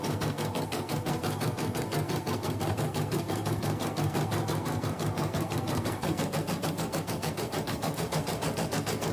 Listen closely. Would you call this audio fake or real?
fake